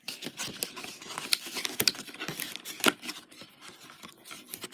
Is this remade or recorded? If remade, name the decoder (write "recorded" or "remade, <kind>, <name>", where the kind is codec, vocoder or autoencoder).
recorded